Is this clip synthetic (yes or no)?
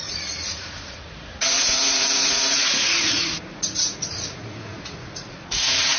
yes